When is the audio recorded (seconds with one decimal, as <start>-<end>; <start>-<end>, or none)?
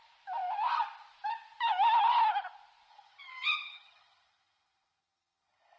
0.0-2.9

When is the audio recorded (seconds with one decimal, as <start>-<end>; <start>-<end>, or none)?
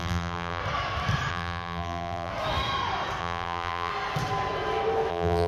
0.6-1.3; 2.3-3.2; 3.9-5.1